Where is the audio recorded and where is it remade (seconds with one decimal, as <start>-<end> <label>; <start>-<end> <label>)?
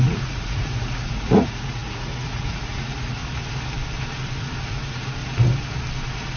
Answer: 0.0-3.2 remade; 3.2-4.7 recorded; 4.7-5.2 remade; 5.2-6.4 recorded